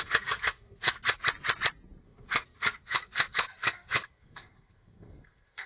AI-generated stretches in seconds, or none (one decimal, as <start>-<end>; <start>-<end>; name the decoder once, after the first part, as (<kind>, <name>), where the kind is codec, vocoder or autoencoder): 0.0-1.2 (codec, SNAC); 2.0-5.7